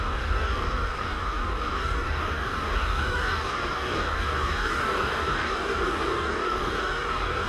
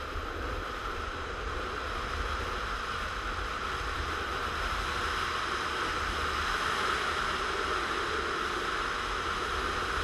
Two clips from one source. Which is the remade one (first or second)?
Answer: first